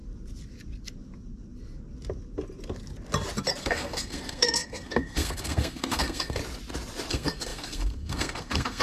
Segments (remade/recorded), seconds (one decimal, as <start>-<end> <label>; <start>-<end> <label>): 0.0-3.6 recorded; 3.6-6.4 remade; 6.4-7.1 recorded; 7.1-8.8 remade

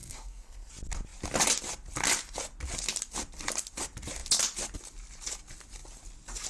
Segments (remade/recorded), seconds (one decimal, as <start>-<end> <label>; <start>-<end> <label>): 0.0-0.7 remade; 0.7-6.5 recorded

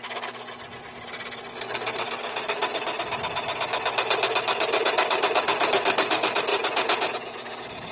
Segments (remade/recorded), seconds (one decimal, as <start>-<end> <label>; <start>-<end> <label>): 0.0-6.5 recorded; 6.5-7.9 remade

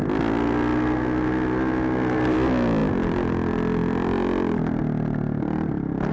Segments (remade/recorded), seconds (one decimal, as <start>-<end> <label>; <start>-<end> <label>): 0.0-6.1 recorded

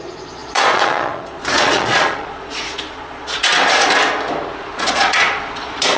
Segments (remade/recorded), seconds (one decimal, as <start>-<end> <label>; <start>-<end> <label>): 0.0-3.5 remade; 3.5-4.6 recorded; 4.6-6.0 remade